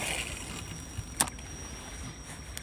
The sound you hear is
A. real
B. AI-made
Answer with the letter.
A